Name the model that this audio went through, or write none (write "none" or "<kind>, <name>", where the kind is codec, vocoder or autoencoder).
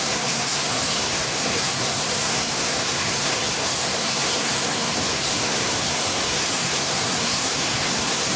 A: codec, SNAC